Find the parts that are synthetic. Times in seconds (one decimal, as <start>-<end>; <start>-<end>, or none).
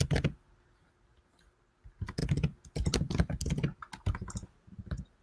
none